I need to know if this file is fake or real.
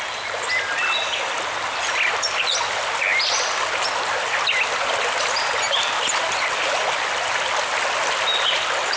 real